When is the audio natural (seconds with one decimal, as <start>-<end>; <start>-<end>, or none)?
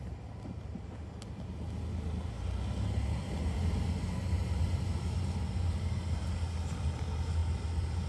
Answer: 0.0-8.1